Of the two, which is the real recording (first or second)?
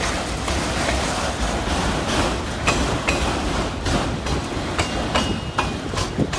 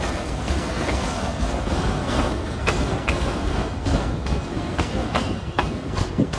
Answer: first